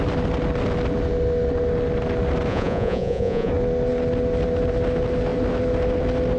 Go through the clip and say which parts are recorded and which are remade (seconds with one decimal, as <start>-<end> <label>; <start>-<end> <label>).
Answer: 0.0-2.5 recorded; 2.5-3.5 remade; 3.5-6.4 recorded